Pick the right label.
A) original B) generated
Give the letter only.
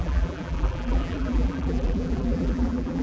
B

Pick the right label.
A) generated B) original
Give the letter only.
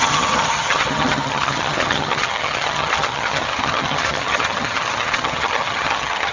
A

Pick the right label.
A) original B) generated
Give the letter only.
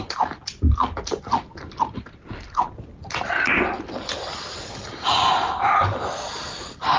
A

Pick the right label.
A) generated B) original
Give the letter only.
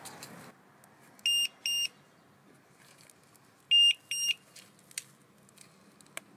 B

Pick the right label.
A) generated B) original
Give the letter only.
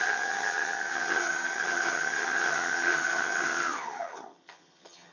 A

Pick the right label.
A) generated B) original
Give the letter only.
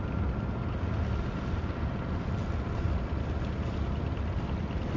B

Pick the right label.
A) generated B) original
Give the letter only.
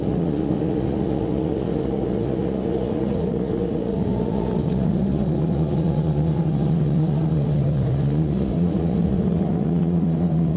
A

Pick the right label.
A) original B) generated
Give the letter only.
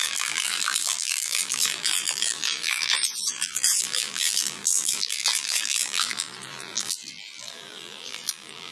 B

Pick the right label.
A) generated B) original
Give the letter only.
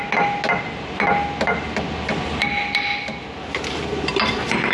B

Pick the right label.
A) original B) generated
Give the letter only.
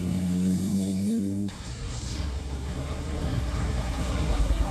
B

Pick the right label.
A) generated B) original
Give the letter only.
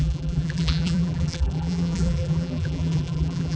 A